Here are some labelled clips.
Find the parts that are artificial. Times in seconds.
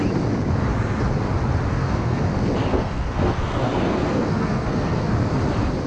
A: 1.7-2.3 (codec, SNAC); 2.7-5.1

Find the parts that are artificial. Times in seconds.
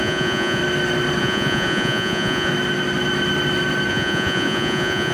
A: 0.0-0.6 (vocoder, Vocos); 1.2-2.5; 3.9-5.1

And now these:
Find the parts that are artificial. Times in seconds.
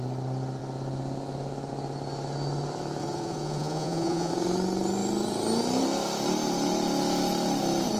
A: 3.0-4.3 (vocoder, Vocos)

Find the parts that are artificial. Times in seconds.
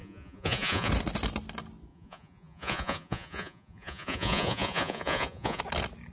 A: 0.0-0.9 (vocoder, Vocos); 1.9-5.6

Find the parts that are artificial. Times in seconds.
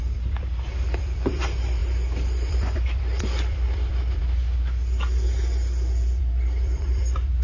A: 0.0-1.8 (vocoder, BigVGAN v2); 2.5-4.2; 6.2-7.4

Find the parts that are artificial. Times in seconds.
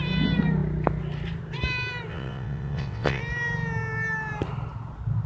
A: 2.1-3.2 (vocoder, WaveNeXt)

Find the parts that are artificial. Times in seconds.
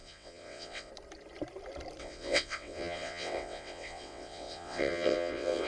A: 0.0-0.9 (vocoder, WaveNeXt); 2.0-5.7